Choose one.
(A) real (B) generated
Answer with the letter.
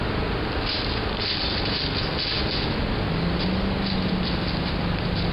A